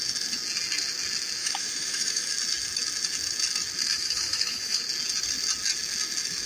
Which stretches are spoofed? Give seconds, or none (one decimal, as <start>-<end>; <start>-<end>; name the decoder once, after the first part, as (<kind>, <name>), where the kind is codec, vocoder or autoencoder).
1.4-2.3 (autoencoder, DAC-VAE); 3.9-4.8